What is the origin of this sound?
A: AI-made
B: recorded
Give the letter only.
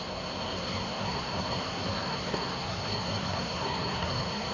A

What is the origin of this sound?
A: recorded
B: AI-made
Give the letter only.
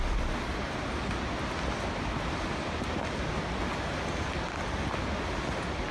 A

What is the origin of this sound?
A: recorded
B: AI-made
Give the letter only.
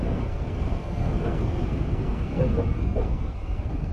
B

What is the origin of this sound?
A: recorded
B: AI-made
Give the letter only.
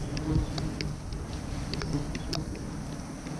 A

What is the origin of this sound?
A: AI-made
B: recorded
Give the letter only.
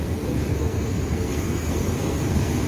A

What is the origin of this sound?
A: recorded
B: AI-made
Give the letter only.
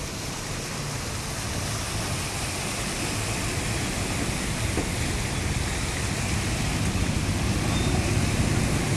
A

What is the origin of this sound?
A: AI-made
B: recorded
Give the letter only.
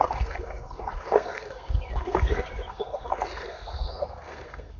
A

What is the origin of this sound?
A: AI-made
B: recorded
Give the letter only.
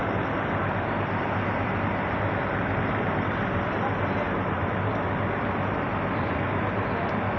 B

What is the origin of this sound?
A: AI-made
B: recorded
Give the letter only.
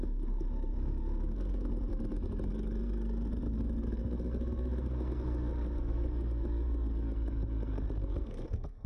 A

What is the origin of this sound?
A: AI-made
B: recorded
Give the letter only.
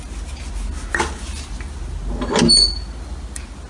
B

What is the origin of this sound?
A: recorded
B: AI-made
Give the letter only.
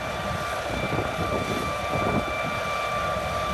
A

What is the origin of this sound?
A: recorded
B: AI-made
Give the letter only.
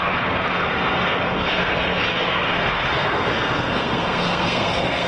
B